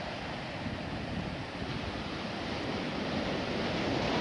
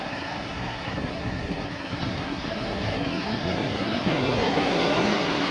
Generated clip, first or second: second